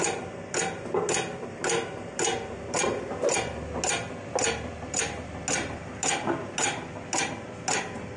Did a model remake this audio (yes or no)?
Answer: no